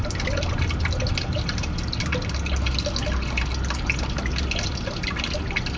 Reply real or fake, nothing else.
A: real